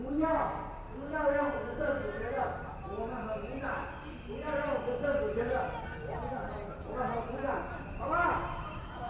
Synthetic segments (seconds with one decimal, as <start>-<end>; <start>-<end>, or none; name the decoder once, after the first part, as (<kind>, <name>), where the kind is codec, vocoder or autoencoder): none